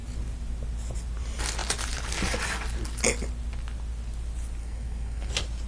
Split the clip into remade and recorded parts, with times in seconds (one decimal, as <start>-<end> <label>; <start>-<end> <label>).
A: 0.0-4.6 recorded; 4.6-5.3 remade; 5.3-5.7 recorded